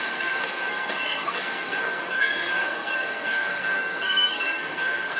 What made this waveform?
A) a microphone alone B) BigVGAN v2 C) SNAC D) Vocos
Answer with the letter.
C